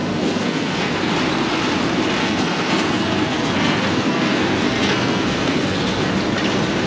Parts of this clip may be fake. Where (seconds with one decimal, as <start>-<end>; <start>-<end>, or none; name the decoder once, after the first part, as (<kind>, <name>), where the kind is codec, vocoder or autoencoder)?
0.0-1.1 (codec, SNAC); 2.2-6.1